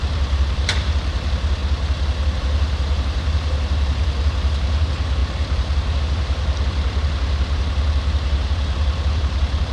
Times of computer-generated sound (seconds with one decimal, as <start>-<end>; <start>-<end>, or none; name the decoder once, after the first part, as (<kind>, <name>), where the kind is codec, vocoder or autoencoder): 0.0-1.6 (vocoder, BigVGAN v2); 2.4-9.7